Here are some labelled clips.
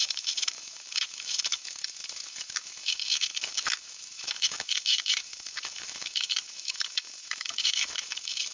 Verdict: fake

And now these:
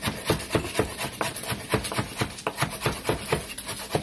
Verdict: real